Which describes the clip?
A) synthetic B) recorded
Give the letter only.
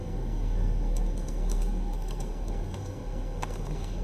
A